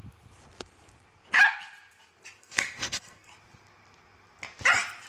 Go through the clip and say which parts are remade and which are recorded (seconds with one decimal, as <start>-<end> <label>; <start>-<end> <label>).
0.0-2.4 recorded; 2.4-3.3 remade; 3.3-5.1 recorded